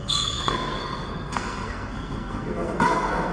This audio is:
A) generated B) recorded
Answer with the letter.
A